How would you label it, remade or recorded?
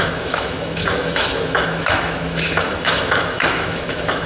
remade